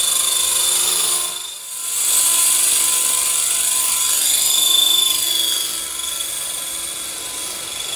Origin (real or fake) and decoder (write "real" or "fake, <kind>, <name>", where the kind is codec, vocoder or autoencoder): real